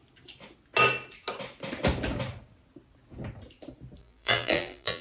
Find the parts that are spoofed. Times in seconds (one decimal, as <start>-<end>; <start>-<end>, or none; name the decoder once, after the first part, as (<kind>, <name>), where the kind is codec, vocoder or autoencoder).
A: 4.0-5.0 (vocoder, BigVGAN v2)